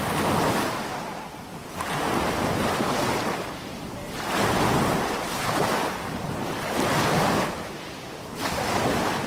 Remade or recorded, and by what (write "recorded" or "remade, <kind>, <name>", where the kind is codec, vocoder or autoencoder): recorded